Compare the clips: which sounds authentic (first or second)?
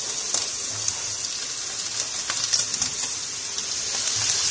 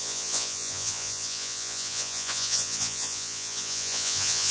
first